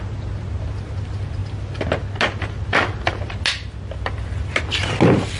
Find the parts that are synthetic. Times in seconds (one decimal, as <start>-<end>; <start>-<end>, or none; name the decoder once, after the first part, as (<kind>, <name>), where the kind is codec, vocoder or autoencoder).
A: none